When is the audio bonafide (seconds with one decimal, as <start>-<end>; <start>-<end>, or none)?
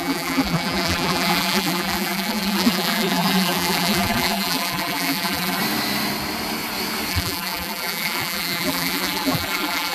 5.6-7.1